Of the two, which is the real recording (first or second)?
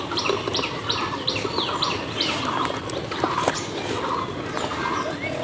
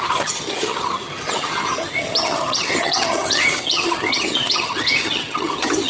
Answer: first